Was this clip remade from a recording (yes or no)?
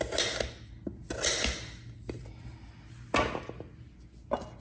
no